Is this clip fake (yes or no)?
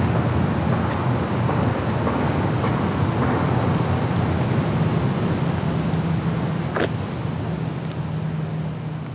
no